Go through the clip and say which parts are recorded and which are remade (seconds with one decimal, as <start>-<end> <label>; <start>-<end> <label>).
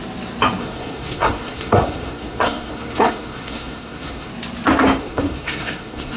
0.0-0.6 recorded; 0.6-4.3 remade; 4.3-5.0 recorded; 5.0-6.2 remade